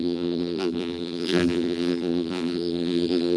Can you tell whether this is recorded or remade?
remade